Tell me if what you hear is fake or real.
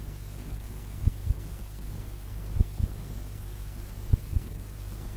fake